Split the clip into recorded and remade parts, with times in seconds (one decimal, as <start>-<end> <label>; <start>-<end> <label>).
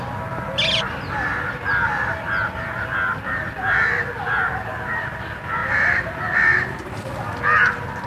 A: 0.0-5.6 recorded; 5.6-6.2 remade; 6.2-8.1 recorded